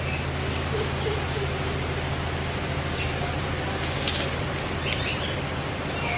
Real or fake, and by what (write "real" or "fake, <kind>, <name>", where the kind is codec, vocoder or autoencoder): real